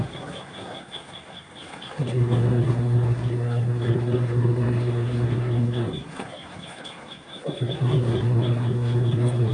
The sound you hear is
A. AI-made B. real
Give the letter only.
A